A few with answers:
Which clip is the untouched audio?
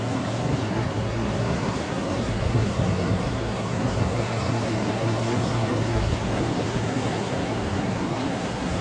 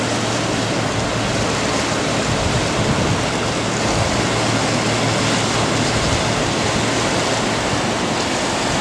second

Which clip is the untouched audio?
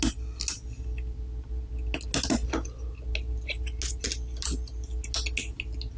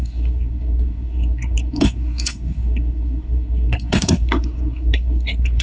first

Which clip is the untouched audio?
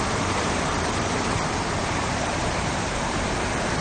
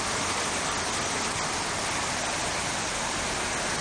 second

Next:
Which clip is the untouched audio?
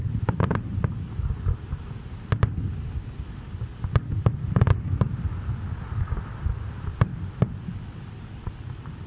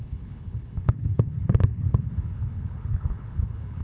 first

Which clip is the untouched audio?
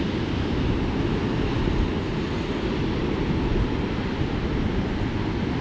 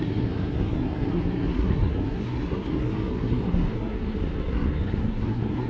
first